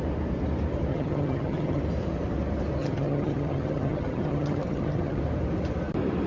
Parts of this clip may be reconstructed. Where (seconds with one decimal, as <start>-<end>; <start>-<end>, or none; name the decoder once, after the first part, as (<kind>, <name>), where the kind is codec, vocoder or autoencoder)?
0.9-1.8 (vocoder, HiFi-GAN); 2.8-5.2